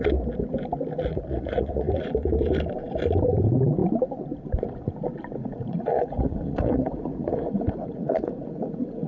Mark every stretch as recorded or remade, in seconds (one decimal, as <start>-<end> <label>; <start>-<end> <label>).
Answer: 0.0-1.1 recorded; 1.1-2.1 remade; 2.1-5.4 recorded; 5.4-9.1 remade